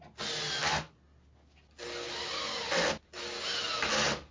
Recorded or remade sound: recorded